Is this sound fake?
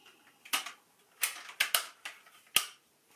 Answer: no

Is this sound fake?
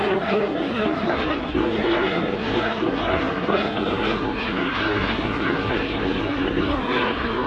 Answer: yes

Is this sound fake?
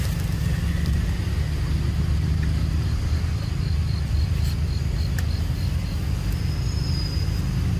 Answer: no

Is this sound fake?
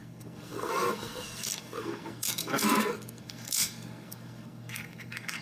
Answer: yes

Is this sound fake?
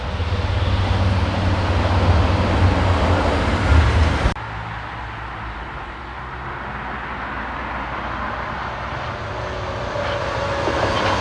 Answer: no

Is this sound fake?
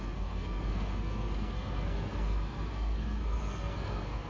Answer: yes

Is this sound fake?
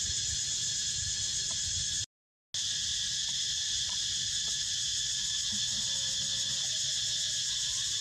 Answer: no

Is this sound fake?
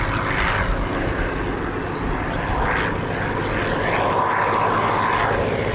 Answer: no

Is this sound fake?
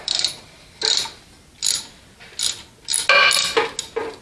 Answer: no